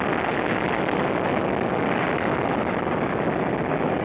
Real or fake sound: real